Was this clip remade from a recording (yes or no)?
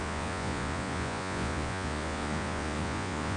yes